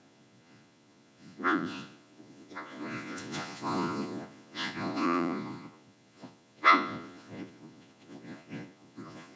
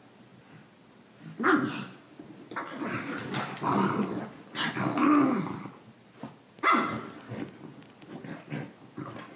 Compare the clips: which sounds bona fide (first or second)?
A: second